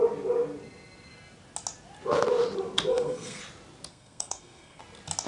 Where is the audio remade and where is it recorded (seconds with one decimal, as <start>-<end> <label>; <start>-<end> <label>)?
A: 0.0-2.9 recorded; 2.9-3.4 remade; 3.4-3.9 recorded; 3.9-4.8 remade; 4.8-5.3 recorded